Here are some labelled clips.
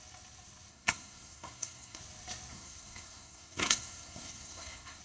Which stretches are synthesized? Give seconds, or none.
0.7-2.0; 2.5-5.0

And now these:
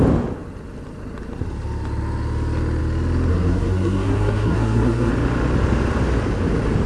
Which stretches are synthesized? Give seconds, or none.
3.3-5.1

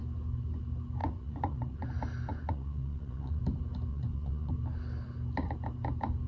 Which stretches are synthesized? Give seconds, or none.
1.0-1.9; 2.3-3.4; 3.9-4.5

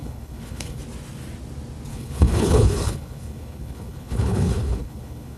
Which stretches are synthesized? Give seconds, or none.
0.0-0.8; 1.9-5.4

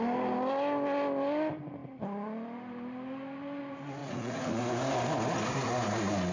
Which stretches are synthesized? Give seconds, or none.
4.0-4.6

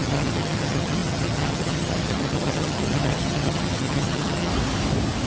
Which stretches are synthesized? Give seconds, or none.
0.0-4.5

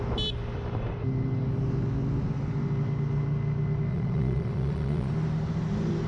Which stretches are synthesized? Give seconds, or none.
3.9-5.1